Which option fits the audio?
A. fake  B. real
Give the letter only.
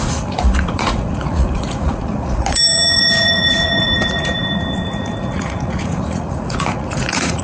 A